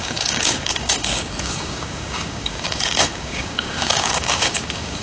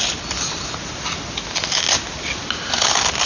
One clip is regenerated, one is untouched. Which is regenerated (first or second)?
first